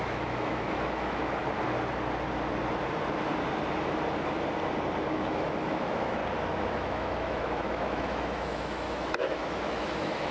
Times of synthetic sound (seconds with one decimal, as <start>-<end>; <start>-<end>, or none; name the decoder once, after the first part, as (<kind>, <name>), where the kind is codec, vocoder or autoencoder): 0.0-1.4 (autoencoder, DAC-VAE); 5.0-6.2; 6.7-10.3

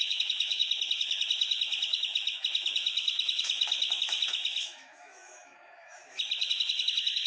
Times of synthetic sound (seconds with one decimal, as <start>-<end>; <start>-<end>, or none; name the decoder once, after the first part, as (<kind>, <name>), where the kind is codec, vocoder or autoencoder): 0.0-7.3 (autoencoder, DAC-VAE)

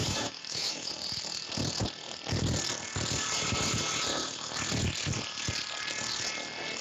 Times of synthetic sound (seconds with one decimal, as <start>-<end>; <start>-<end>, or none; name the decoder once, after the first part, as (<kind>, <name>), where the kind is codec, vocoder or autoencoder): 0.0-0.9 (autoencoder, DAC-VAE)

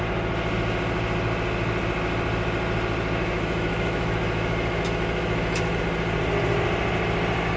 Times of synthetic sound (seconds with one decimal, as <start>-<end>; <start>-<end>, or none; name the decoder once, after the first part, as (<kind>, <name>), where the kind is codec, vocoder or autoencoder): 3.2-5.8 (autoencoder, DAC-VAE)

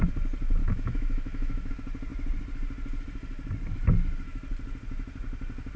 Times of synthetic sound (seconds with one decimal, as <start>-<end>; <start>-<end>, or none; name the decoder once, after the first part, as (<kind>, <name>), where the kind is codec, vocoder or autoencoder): 0.6-1.7 (autoencoder, DAC-VAE)

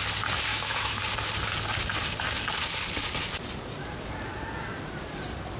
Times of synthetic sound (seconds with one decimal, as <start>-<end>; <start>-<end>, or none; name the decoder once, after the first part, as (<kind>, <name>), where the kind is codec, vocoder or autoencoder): 0.5-1.0 (autoencoder, DAC-VAE)